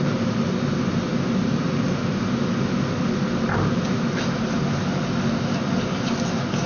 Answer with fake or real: real